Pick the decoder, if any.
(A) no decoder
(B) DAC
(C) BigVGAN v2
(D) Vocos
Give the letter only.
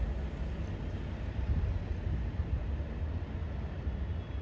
A